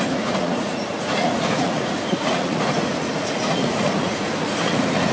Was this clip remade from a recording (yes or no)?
yes